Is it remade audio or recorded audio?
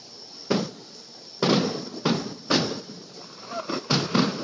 recorded